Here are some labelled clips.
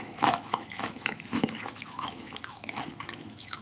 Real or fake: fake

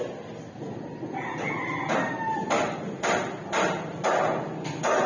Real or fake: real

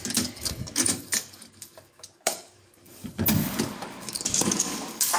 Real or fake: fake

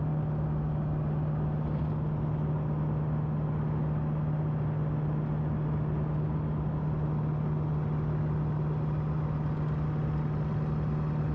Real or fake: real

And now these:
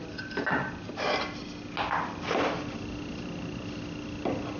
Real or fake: real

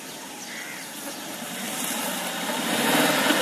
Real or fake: real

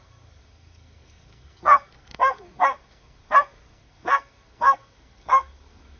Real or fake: fake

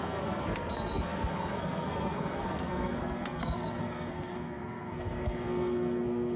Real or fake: fake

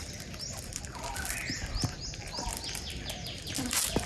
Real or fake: real